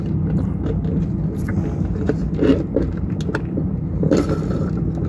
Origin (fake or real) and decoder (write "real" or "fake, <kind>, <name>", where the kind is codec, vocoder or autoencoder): real